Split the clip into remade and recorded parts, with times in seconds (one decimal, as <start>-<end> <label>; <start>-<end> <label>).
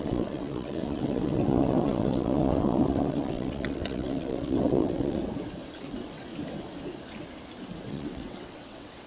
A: 0.0-5.2 remade; 5.2-5.8 recorded; 5.8-6.3 remade; 6.3-7.9 recorded; 7.9-9.1 remade